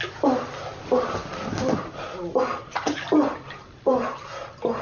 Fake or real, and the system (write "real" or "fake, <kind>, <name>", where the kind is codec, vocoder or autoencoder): real